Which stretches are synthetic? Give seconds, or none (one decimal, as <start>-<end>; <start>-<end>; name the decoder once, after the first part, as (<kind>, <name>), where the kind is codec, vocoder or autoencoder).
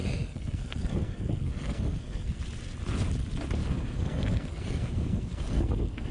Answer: 0.0-2.4 (codec, SNAC); 3.6-6.1